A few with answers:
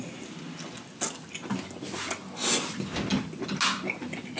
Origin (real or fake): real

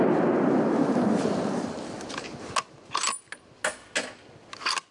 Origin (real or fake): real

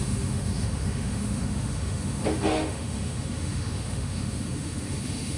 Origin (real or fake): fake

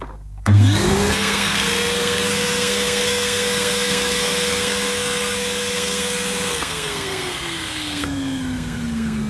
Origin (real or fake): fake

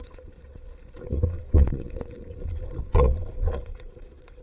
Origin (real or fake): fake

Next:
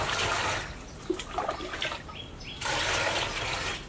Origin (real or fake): real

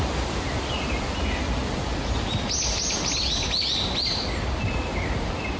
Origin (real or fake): real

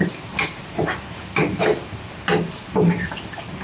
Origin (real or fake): real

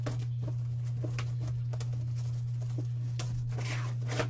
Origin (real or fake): real